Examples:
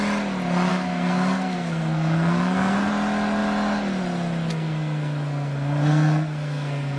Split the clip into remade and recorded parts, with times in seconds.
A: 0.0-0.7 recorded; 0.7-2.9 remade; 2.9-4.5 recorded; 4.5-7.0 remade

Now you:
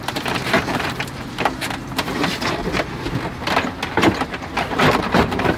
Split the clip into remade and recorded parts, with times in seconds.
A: 0.0-2.1 remade; 2.1-4.6 recorded; 4.6-5.6 remade